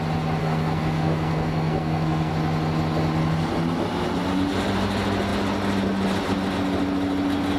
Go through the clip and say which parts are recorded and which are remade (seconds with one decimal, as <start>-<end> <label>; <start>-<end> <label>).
0.0-0.4 recorded; 0.4-2.3 remade; 2.3-7.6 recorded